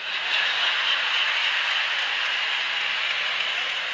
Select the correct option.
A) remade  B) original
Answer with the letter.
A